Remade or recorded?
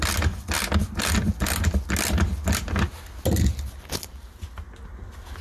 recorded